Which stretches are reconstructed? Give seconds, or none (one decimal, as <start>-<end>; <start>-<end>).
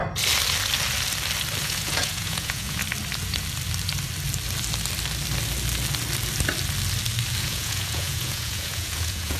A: 1.6-2.8; 7.4-9.4